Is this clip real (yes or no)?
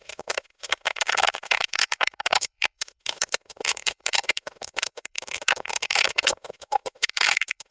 no